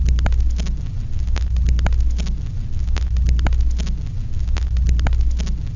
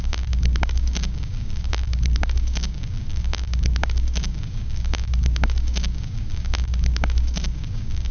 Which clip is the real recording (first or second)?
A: first